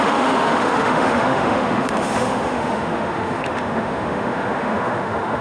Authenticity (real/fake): fake